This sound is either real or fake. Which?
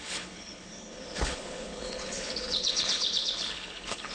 fake